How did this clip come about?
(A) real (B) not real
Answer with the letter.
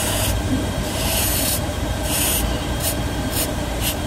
B